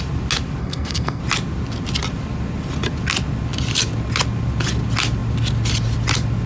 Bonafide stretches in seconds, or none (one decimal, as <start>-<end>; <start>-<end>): 0.0-0.6; 1.2-6.5